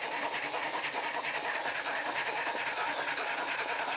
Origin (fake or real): real